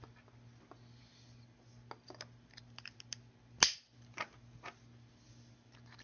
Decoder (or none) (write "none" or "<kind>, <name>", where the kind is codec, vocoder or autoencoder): none